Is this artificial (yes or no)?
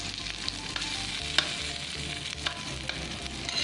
no